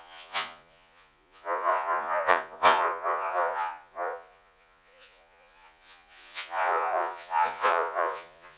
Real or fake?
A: fake